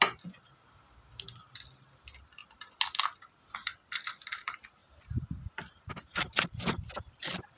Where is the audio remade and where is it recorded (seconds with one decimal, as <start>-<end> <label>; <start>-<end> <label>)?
0.0-4.8 recorded; 4.8-5.5 remade; 5.5-7.6 recorded